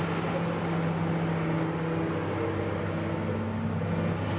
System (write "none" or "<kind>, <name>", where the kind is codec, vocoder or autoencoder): none